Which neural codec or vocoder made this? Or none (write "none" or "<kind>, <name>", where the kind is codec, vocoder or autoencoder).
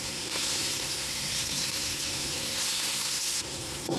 codec, SNAC